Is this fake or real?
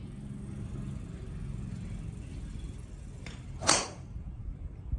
real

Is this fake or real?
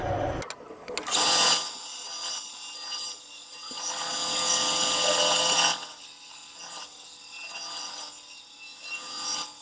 real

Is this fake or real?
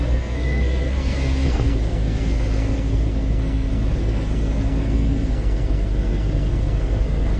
fake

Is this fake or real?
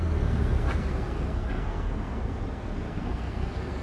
fake